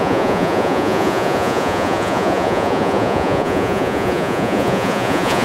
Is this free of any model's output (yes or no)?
no